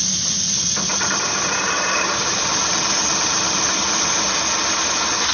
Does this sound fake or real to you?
real